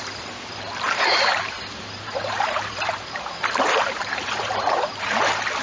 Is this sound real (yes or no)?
no